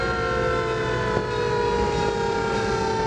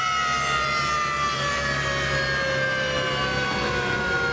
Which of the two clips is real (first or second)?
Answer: first